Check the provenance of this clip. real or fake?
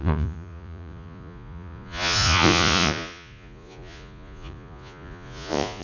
fake